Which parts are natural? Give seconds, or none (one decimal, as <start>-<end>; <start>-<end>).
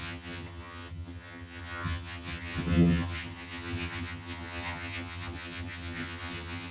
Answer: none